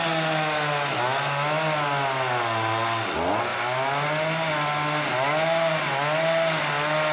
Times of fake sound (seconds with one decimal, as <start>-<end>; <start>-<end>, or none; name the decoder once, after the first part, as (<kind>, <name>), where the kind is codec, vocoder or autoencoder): none